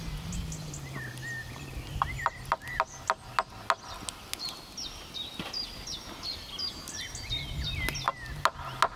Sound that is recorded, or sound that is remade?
recorded